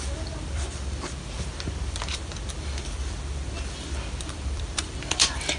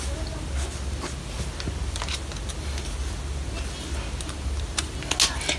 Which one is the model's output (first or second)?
first